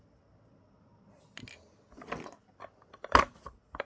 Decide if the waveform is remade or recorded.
recorded